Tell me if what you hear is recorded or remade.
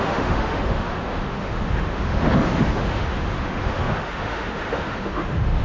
remade